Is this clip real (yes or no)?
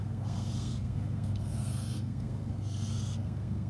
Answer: no